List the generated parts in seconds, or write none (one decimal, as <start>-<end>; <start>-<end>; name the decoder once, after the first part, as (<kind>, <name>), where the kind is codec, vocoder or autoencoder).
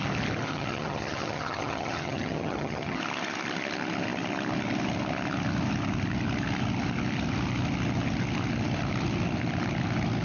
0.5-3.0 (vocoder, HiFi-GAN)